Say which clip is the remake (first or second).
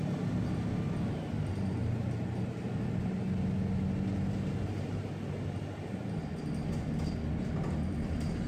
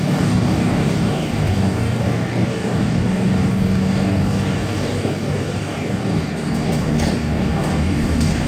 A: second